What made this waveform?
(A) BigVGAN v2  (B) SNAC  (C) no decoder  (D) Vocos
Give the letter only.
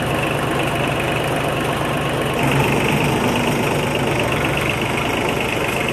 C